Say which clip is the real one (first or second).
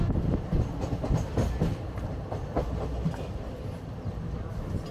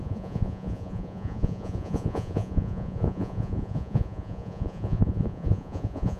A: first